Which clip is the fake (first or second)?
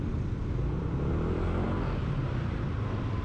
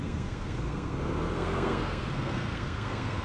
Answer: second